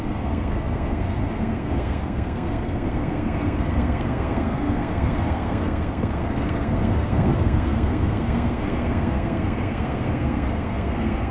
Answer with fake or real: fake